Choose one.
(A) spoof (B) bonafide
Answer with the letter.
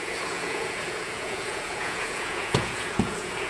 A